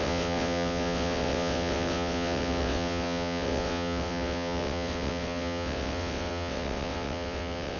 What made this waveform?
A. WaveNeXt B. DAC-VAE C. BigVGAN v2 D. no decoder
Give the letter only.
A